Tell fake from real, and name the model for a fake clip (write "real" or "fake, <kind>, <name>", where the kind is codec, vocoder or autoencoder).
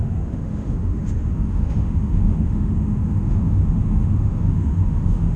fake, autoencoder, DAC-VAE